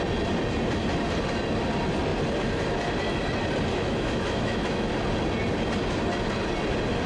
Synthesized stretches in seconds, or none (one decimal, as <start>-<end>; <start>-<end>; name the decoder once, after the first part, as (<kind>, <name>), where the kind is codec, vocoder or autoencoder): 3.7-4.9 (autoencoder, DAC-VAE)